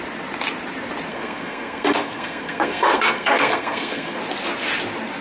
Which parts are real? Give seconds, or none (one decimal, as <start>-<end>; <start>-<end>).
0.0-1.1; 4.2-5.2